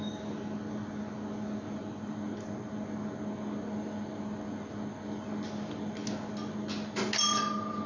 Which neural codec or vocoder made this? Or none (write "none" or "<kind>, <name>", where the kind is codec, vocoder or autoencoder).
none